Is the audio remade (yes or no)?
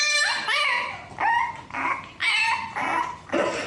no